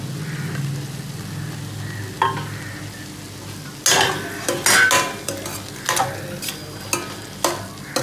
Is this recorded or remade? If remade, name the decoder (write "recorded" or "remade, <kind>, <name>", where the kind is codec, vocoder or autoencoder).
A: recorded